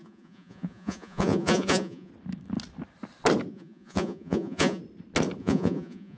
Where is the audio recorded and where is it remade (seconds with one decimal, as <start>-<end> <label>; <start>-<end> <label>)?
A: 0.0-2.1 remade; 2.1-3.5 recorded; 3.5-4.8 remade; 4.8-5.4 recorded; 5.4-6.2 remade